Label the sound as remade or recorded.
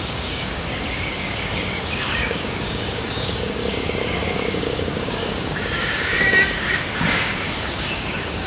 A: remade